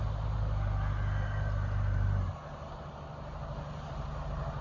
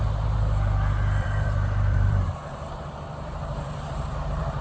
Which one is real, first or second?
first